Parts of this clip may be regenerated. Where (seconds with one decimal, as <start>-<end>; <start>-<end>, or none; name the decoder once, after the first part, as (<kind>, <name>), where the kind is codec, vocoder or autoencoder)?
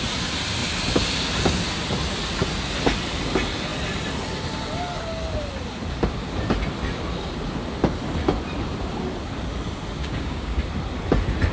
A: 10.0-10.6 (codec, DAC)